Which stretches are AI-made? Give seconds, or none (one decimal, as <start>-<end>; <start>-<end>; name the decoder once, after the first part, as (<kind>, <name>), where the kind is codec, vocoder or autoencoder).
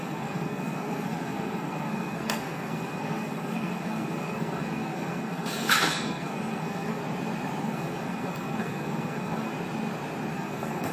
0.0-7.0 (codec, SNAC); 7.6-9.5; 10.3-10.9